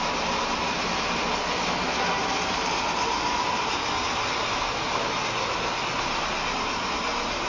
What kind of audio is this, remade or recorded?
recorded